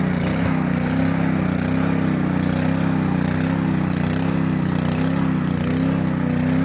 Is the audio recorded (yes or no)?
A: yes